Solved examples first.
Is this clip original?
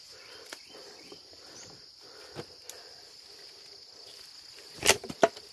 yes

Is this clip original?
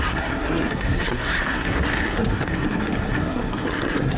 no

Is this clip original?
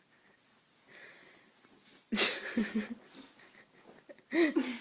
yes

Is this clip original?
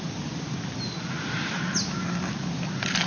yes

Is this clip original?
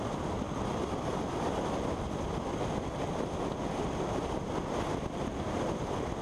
yes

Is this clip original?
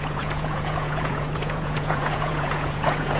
no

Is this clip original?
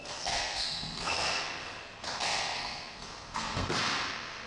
no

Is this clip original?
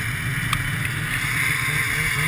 yes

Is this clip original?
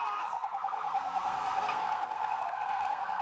no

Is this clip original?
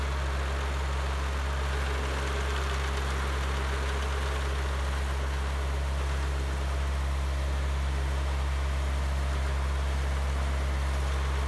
yes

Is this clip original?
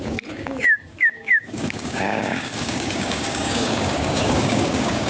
no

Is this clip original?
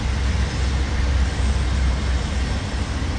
yes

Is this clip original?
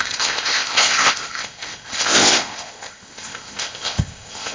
no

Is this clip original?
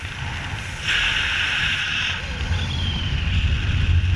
yes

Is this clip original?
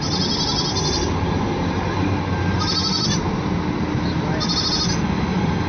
yes